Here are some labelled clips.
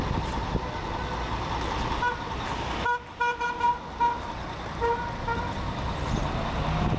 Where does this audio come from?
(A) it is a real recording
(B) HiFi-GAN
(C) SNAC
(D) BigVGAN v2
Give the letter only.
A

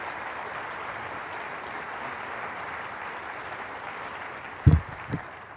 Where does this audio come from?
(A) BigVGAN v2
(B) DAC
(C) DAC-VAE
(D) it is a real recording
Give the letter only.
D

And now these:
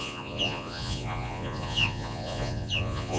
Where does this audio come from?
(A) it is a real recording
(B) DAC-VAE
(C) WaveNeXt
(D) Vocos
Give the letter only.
D